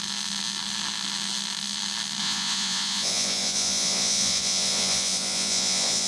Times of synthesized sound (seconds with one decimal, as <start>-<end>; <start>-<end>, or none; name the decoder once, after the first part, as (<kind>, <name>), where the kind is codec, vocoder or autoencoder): 2.2-6.1 (vocoder, Vocos)